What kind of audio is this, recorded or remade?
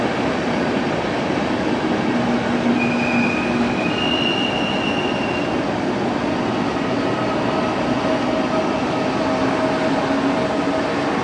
recorded